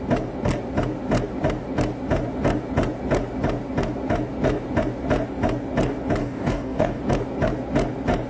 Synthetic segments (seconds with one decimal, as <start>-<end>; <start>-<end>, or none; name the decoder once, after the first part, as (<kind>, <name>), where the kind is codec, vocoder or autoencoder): 6.2-7.0 (codec, DAC)